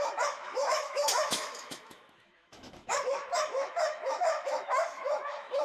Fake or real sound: fake